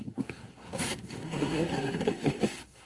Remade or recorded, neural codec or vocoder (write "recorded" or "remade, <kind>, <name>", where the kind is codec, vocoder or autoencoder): remade, codec, SNAC